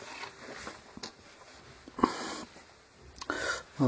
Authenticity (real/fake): real